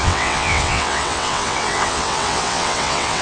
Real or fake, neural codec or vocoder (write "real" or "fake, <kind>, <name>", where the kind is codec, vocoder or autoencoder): fake, vocoder, WaveNeXt